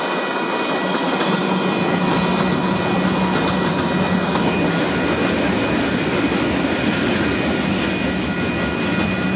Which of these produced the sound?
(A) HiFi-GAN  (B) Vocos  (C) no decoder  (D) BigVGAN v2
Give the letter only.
C